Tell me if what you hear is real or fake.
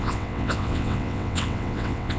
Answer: fake